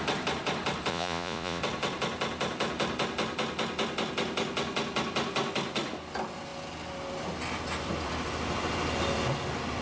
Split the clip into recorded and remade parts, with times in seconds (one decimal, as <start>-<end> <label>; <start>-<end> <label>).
0.0-0.9 recorded; 0.9-1.6 remade; 1.6-9.8 recorded

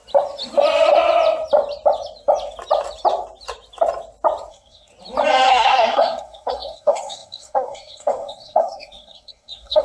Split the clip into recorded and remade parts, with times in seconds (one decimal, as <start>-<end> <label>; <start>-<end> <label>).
0.0-4.5 recorded; 4.5-4.9 remade; 4.9-5.5 recorded; 5.5-9.8 remade

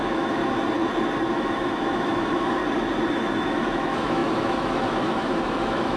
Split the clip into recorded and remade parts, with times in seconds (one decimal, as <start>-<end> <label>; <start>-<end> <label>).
0.0-0.4 remade; 0.4-1.3 recorded; 1.3-2.6 remade; 2.6-3.1 recorded; 3.1-6.0 remade

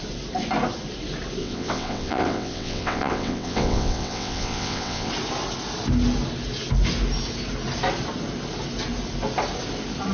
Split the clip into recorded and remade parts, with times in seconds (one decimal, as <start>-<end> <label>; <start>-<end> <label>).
0.0-1.4 recorded; 1.4-5.1 remade; 5.1-10.1 recorded

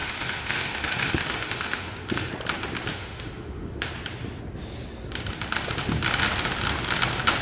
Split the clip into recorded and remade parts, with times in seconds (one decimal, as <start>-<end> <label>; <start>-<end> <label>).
0.0-2.3 remade; 2.3-2.9 recorded; 2.9-3.9 remade; 3.9-7.4 recorded

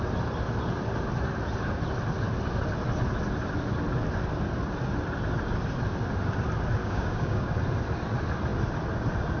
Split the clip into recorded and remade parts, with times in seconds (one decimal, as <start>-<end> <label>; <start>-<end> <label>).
0.0-6.8 recorded; 6.8-7.5 remade; 7.5-9.4 recorded